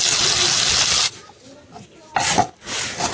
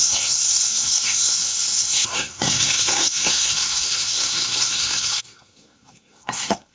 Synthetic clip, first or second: second